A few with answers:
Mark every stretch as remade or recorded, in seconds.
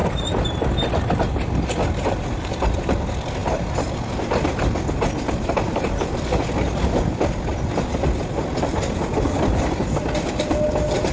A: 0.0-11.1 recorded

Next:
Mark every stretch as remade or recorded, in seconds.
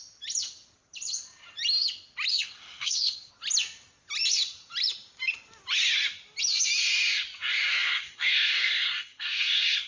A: 0.0-2.3 recorded; 2.3-3.3 remade; 3.3-7.7 recorded; 7.7-9.9 remade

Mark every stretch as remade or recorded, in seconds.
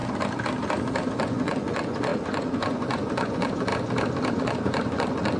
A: 0.0-1.1 recorded; 1.1-3.7 remade; 3.7-4.3 recorded; 4.3-5.4 remade